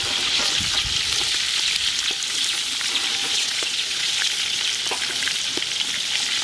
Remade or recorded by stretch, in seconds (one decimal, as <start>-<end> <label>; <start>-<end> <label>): 0.0-3.2 recorded; 3.2-4.1 remade; 4.1-6.4 recorded